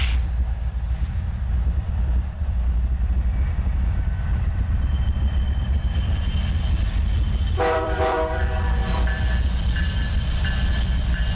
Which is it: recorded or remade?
remade